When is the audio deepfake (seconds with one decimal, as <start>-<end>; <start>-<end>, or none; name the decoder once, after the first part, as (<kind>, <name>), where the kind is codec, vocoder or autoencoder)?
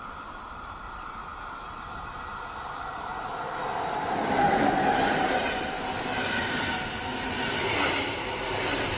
none